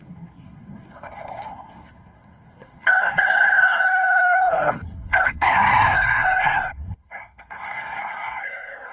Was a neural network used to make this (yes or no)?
yes